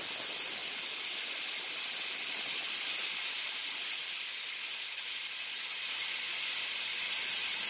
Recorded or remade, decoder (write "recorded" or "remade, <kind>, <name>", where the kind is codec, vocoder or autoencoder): recorded